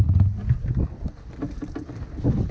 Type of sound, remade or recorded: recorded